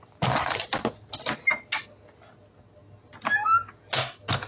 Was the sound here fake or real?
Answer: real